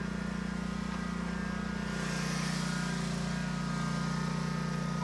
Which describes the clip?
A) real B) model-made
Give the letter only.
A